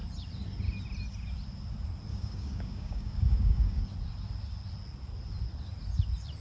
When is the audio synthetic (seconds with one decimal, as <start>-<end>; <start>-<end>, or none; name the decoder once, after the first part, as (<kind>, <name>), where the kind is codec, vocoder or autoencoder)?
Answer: 2.1-3.8 (codec, DAC)